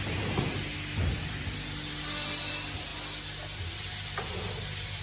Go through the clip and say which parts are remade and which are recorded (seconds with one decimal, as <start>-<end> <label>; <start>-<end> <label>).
0.0-5.0 recorded